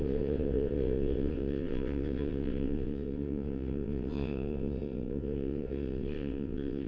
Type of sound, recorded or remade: remade